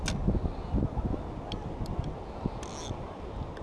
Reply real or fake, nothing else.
real